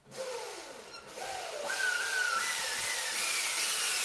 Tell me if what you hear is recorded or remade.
recorded